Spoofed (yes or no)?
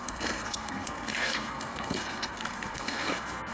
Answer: yes